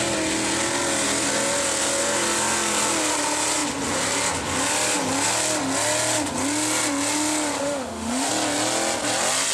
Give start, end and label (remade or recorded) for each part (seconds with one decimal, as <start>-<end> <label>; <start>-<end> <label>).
0.0-7.6 recorded; 7.6-8.3 remade; 8.3-9.5 recorded